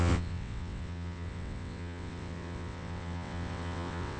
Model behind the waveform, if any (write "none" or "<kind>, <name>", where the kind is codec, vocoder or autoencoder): vocoder, WaveNeXt